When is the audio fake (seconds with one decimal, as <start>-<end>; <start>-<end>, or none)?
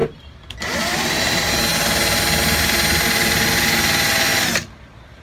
0.0-1.7; 4.8-5.2